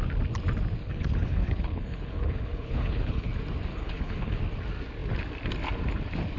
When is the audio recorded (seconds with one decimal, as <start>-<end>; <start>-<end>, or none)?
0.0-0.8; 3.3-3.7; 4.4-6.4